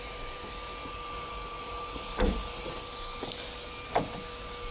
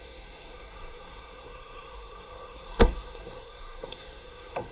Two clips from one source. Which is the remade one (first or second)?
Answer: second